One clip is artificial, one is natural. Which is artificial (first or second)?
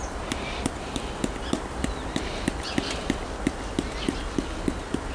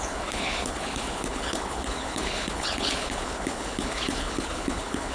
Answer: second